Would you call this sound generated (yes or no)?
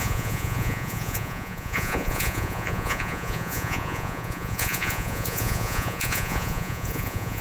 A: yes